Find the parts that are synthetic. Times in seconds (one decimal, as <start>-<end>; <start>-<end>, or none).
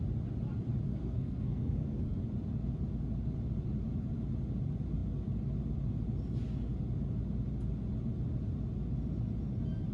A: 0.9-2.2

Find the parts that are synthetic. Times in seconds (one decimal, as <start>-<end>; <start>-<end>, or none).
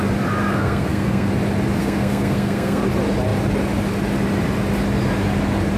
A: 0.4-1.3; 1.8-2.8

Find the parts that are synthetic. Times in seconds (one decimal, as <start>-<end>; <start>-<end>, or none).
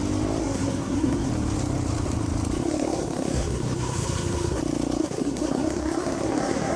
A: 0.4-1.3; 2.6-4.6; 5.0-6.8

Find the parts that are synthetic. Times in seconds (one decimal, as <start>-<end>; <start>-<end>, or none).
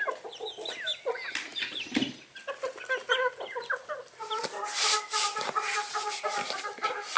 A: none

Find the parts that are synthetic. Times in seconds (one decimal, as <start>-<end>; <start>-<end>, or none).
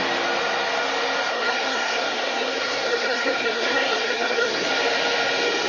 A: 1.3-4.7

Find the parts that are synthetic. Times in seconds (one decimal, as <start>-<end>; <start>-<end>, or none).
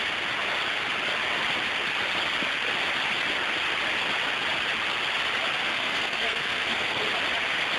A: 5.7-7.0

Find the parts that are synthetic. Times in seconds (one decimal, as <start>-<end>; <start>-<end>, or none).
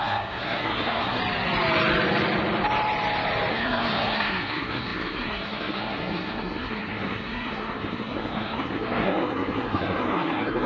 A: 0.0-1.2; 3.5-10.7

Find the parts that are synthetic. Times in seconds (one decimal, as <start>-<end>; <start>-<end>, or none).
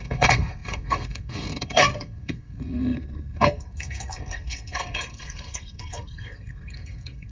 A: 0.0-7.3